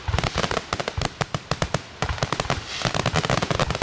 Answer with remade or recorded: recorded